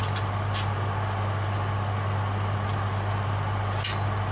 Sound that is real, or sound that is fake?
real